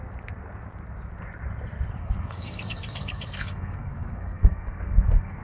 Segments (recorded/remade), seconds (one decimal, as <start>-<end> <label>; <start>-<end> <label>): 0.0-2.0 recorded; 2.0-5.4 remade